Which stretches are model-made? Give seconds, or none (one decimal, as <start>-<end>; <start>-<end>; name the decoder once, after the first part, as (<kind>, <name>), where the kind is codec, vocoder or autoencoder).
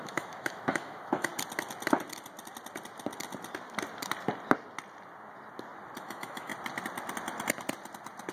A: 0.0-1.3 (autoencoder, DAC-VAE); 6.0-6.5